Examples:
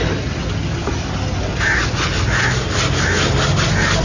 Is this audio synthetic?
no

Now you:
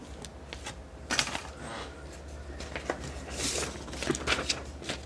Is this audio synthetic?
no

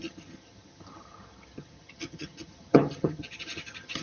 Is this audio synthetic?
yes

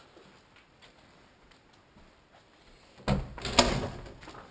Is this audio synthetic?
no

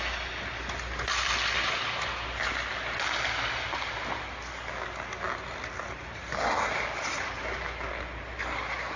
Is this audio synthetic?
no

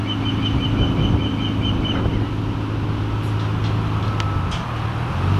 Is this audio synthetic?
no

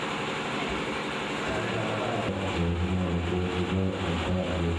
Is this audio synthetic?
no